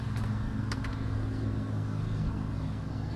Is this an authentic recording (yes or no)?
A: no